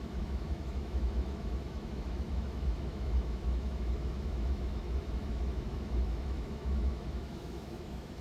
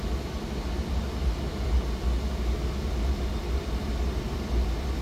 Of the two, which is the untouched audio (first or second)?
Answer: second